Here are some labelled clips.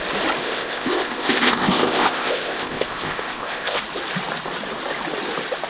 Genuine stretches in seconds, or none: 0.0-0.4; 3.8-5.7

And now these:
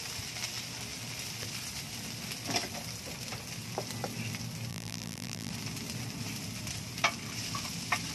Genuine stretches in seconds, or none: 0.0-4.7; 5.5-8.1

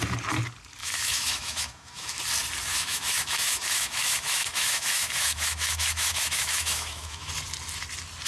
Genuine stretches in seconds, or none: 0.0-0.8; 2.2-2.7; 7.3-8.3

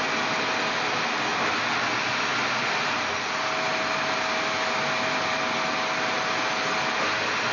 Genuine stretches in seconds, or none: 0.0-7.5

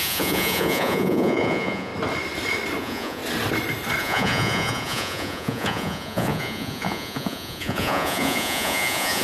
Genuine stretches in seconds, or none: 1.9-2.8; 3.2-4.0

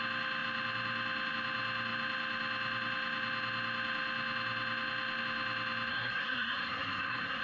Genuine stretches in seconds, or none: 0.0-5.9

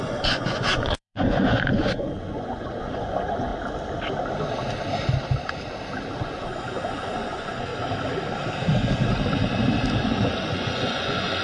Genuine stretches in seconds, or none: 3.5-6.2; 7.7-10.0

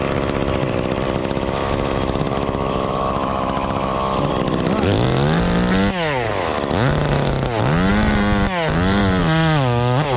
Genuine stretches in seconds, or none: 0.0-1.2; 4.3-10.2